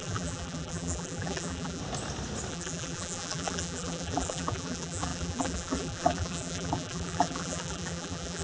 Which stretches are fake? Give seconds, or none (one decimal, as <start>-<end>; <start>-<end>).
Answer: 0.0-1.8; 2.5-8.4